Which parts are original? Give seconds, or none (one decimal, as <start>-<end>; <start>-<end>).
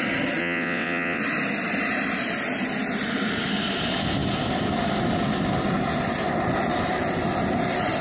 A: 0.0-0.4; 1.2-8.0